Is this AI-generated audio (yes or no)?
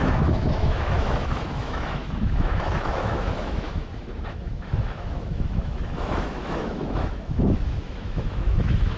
yes